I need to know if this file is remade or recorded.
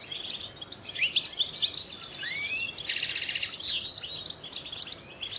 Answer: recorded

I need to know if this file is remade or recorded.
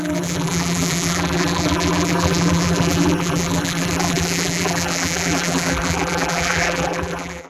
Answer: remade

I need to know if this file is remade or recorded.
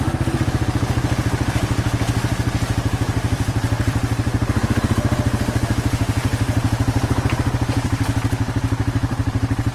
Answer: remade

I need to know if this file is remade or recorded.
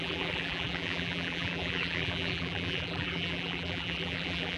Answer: remade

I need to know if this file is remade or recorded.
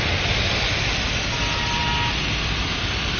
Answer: recorded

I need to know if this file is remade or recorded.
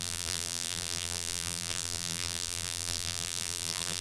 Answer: remade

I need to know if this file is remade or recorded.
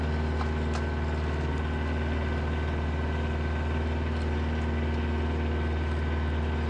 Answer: recorded